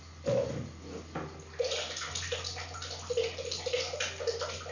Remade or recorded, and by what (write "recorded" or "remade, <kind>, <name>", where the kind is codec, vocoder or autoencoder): recorded